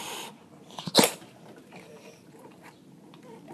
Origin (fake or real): real